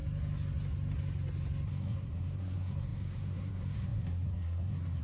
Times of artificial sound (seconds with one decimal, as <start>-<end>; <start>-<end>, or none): 1.7-5.0